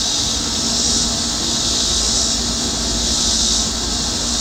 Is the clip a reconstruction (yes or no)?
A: no